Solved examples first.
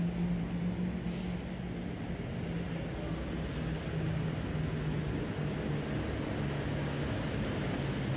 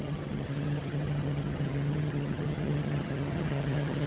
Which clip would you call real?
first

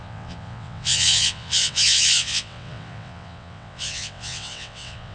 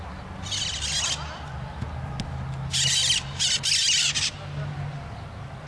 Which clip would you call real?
second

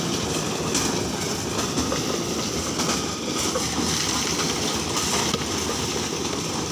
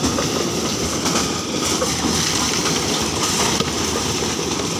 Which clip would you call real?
first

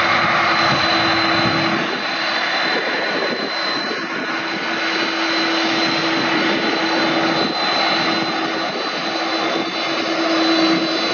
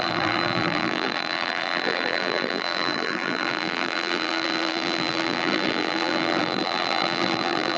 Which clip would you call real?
first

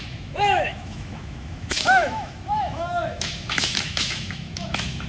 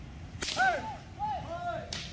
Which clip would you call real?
second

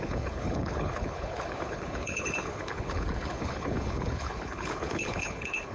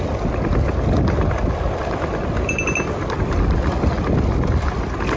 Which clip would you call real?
second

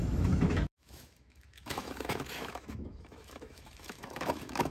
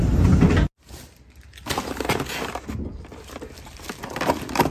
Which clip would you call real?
second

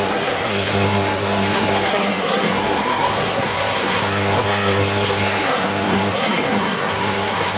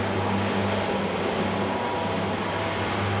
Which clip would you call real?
second